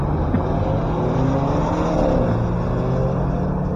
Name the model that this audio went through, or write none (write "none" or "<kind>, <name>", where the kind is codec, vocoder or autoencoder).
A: none